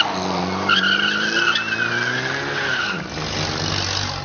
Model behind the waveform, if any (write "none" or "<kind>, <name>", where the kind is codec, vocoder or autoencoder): none